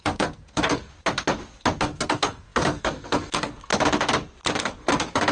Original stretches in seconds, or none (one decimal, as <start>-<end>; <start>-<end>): 0.9-1.8; 3.7-4.6